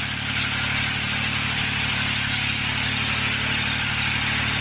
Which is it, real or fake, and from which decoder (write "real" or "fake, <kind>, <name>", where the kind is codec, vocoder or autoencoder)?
real